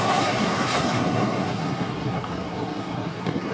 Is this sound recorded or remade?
remade